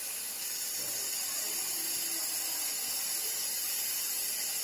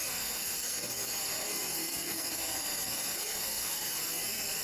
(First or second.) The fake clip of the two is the second